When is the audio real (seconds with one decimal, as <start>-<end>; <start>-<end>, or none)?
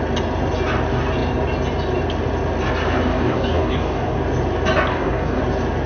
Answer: 0.0-3.1; 4.2-4.9; 5.4-5.9